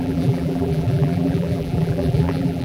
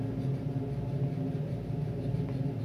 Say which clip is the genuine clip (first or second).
second